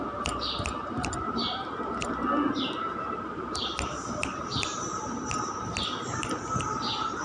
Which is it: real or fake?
real